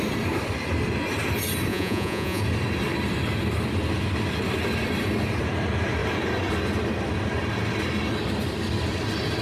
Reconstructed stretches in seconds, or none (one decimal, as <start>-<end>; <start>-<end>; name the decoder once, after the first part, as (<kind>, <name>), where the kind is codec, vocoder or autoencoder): 1.7-2.4 (vocoder, Vocos)